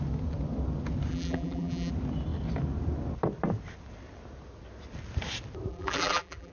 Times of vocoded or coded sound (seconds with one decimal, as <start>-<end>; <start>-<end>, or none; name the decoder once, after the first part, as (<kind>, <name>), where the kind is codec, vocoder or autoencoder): 1.1-1.9 (vocoder, BigVGAN v2); 5.7-6.5